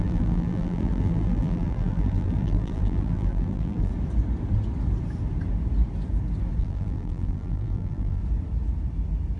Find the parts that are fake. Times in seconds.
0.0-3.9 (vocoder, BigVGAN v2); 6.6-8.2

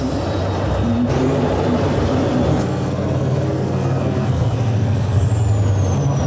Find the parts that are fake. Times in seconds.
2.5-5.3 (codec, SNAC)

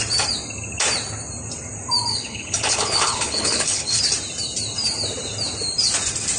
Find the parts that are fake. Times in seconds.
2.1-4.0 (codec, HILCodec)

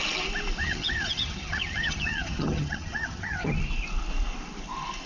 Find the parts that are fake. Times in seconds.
0.6-3.5 (vocoder, HiFi-GAN)

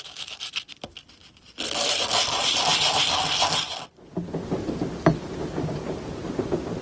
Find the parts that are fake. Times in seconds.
none